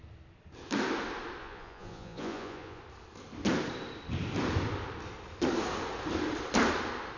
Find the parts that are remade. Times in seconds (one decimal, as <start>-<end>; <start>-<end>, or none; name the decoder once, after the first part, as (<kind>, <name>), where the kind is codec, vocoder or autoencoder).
1.4-2.8 (vocoder, Vocos)